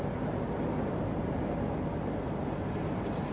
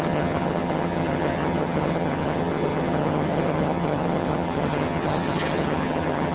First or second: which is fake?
second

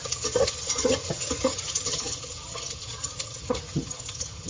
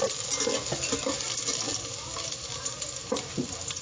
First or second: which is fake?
first